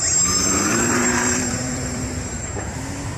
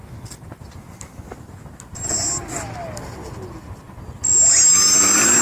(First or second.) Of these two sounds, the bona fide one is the second